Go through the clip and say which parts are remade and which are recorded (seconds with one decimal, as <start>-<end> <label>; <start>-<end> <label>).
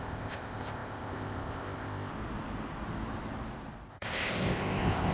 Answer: 0.0-2.1 remade; 2.1-3.9 recorded; 3.9-5.1 remade